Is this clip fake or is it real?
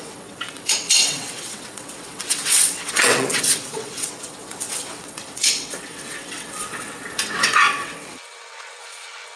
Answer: fake